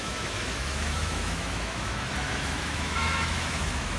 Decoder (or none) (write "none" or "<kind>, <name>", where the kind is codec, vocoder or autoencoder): autoencoder, DAC-VAE